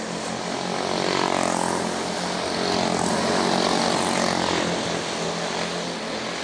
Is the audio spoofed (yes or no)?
no